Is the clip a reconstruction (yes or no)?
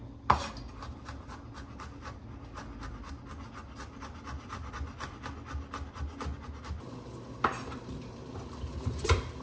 no